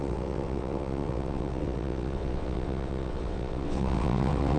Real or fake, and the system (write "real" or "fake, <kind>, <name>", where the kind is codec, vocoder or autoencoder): fake, vocoder, WaveNeXt